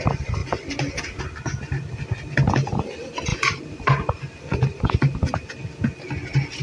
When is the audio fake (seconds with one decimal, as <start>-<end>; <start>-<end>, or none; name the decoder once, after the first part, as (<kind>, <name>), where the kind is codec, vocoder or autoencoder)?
3.3-5.4 (vocoder, BigVGAN v2)